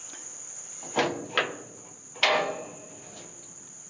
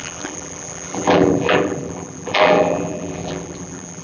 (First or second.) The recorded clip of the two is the first